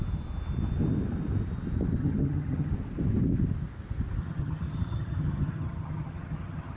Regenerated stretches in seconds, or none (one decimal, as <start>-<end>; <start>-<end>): 2.0-2.7; 4.2-6.8